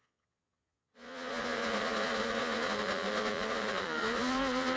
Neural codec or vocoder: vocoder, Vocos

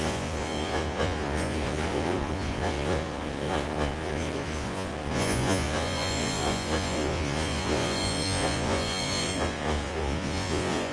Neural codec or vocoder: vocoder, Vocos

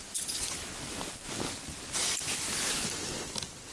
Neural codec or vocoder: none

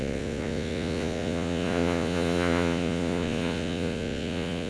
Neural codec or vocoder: vocoder, Vocos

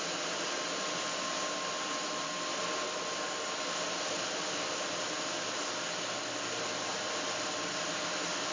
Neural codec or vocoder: none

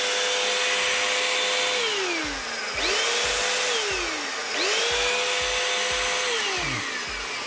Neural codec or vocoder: none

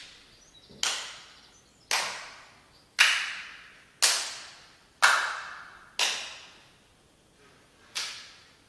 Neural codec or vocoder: none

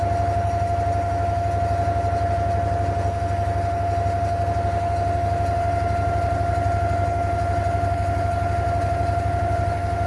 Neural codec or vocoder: none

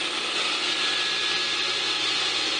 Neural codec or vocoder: none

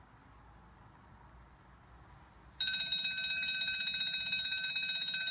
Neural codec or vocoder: none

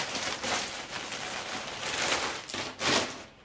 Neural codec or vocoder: none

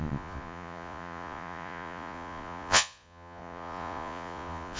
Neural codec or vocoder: vocoder, Vocos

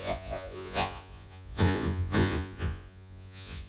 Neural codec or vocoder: vocoder, Vocos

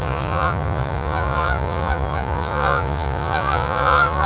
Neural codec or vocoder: vocoder, Vocos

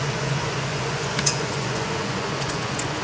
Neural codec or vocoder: vocoder, Vocos